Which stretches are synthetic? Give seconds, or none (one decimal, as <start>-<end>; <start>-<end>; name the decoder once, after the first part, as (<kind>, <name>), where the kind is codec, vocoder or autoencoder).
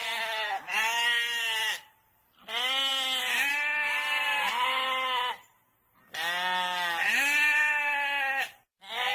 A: none